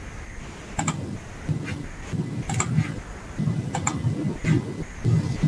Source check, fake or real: real